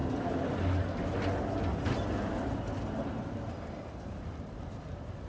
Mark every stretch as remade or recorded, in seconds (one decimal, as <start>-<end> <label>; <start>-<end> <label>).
0.0-5.3 recorded